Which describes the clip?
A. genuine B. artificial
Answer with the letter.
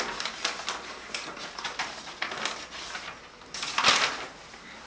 A